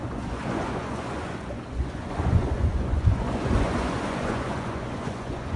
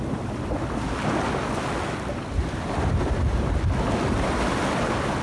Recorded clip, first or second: second